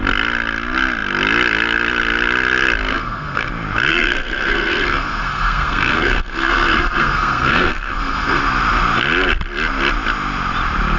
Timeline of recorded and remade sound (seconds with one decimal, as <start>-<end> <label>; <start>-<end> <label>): 0.0-2.9 recorded; 2.9-3.5 remade; 3.5-3.9 recorded; 3.9-8.4 remade; 8.4-11.0 recorded